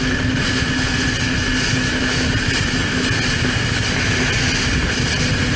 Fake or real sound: real